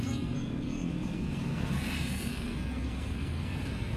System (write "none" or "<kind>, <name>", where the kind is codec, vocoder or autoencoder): codec, SNAC